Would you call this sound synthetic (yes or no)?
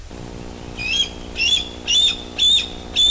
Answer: no